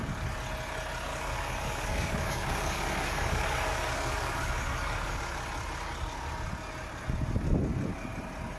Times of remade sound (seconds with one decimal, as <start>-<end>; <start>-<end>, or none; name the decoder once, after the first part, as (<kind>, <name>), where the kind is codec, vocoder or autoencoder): 1.1-5.2 (codec, DAC)